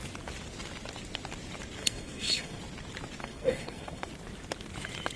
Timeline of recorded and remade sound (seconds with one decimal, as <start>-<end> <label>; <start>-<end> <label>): 0.0-1.8 recorded; 1.8-2.6 remade; 2.6-3.2 recorded; 3.2-4.1 remade; 4.1-5.2 recorded